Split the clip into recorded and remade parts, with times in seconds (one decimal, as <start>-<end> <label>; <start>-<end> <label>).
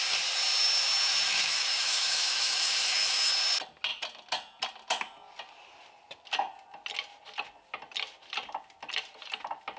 0.0-0.9 recorded; 0.9-3.3 remade; 3.3-9.8 recorded